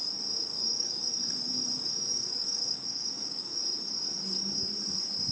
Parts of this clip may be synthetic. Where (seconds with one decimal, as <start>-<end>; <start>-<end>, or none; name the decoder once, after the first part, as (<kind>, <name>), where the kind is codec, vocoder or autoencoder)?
0.4-1.0 (codec, DAC); 2.1-3.6